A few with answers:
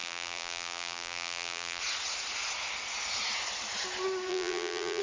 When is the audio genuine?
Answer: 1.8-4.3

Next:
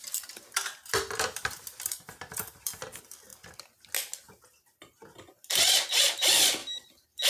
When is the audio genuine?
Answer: 3.3-5.9

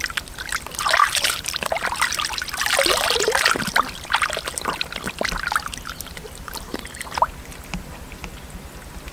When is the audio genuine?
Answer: 0.0-1.0; 1.8-9.1

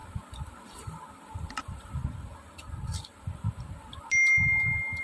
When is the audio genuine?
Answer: 0.0-1.6; 2.0-5.0

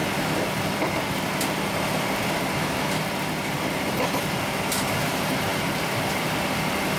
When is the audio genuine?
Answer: none